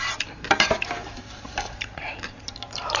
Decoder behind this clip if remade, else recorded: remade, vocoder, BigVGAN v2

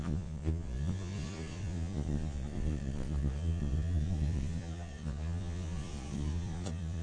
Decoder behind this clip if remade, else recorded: remade, vocoder, Vocos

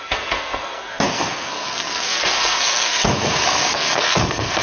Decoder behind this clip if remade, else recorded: remade, codec, SNAC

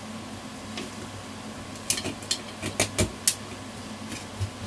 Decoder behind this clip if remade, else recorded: recorded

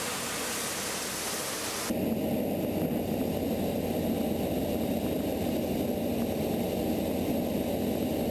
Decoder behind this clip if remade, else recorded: recorded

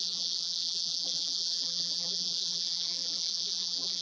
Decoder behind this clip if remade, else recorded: remade, vocoder, BigVGAN v2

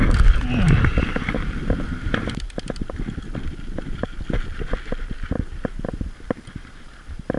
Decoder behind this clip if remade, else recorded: recorded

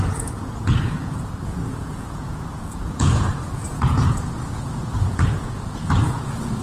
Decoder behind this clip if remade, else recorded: remade, vocoder, Vocos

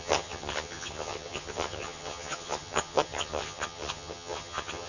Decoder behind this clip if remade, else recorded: remade, vocoder, HiFi-GAN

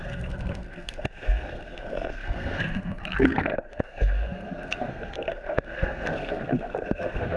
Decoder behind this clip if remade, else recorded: remade, codec, SNAC